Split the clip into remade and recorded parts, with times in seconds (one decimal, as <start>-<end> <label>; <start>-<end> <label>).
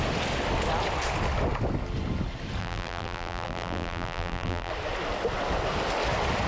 0.0-2.6 recorded; 2.6-4.7 remade; 4.7-6.5 recorded